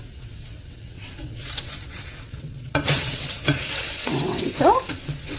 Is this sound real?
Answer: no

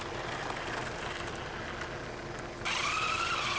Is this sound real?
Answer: yes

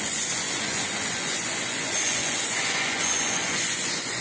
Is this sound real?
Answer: no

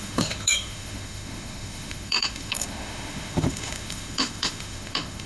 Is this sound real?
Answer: no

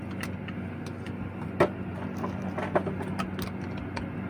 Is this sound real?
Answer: yes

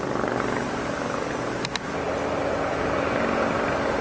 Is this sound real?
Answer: yes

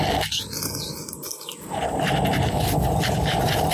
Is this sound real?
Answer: yes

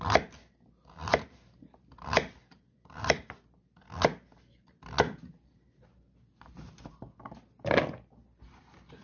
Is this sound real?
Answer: yes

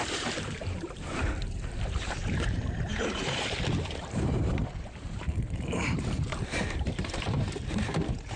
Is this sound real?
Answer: no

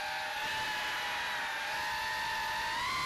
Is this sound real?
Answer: yes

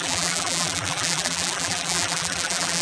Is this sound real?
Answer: no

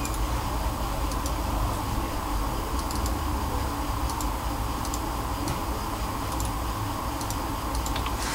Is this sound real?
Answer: yes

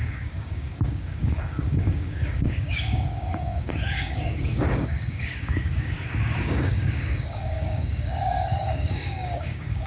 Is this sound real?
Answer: no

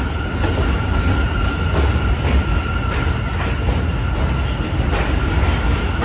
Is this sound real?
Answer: yes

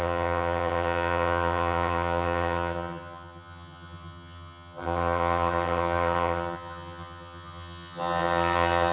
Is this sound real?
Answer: no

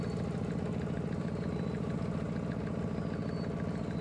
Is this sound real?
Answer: yes